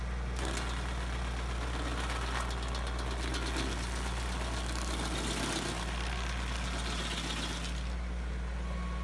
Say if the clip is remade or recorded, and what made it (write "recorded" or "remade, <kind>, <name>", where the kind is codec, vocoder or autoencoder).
recorded